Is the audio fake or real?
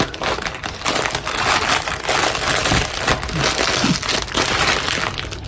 real